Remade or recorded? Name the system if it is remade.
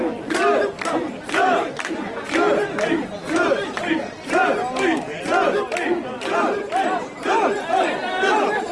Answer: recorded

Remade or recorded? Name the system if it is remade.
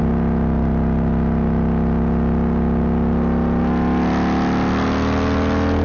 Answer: recorded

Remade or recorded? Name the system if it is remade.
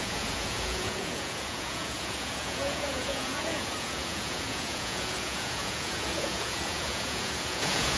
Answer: remade, vocoder, Vocos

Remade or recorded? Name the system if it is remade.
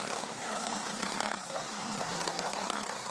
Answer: remade, codec, SNAC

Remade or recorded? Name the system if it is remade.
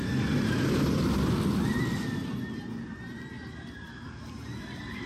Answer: recorded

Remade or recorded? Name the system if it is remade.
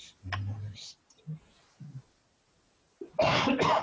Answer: recorded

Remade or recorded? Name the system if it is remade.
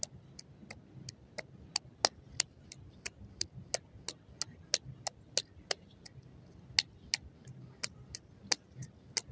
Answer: recorded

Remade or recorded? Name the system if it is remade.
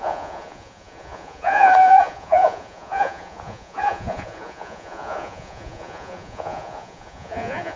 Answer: remade, vocoder, Vocos